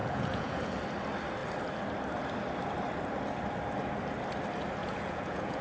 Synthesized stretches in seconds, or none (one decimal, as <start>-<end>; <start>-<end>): 0.0-0.7; 4.8-5.6